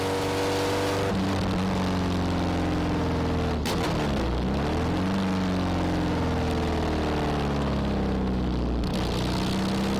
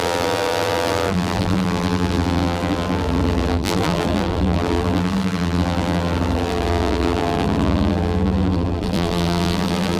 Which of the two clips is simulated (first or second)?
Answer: second